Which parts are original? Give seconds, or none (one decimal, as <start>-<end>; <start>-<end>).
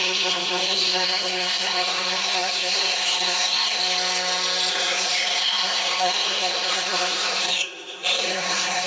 3.8-4.7